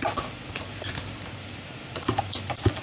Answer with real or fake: fake